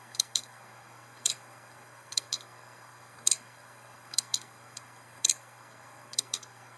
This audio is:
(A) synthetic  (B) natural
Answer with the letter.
A